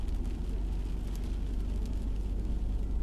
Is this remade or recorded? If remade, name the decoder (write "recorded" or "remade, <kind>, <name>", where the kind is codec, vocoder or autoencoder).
recorded